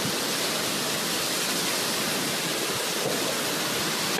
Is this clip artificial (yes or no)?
no